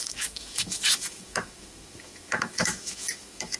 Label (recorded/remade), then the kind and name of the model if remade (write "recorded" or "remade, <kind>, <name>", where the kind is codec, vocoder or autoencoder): remade, autoencoder, DAC-VAE